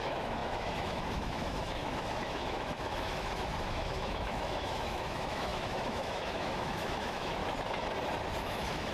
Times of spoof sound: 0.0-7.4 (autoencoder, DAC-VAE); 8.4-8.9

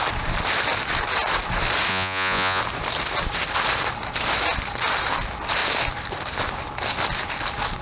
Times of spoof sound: 1.9-2.6 (vocoder, Vocos)

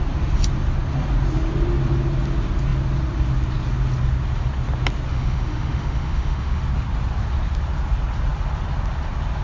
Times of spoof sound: 5.1-6.6 (autoencoder, DAC-VAE)

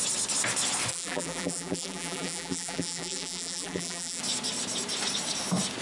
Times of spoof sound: 0.9-4.2 (vocoder, BigVGAN v2)

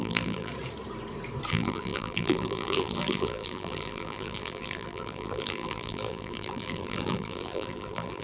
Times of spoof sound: 0.0-0.5 (vocoder, BigVGAN v2); 1.5-8.2